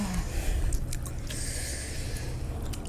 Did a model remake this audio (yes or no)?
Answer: no